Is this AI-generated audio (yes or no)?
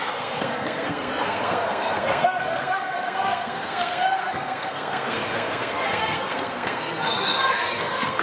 yes